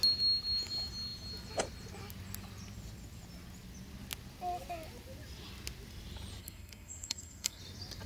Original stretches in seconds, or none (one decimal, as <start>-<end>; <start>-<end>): 0.0-6.4; 7.6-8.1